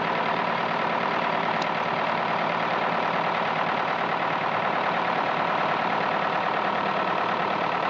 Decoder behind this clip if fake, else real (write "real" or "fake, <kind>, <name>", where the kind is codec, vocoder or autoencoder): fake, vocoder, BigVGAN v2